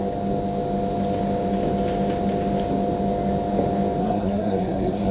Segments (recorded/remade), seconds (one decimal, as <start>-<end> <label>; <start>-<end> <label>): 0.0-4.0 recorded; 4.0-5.1 remade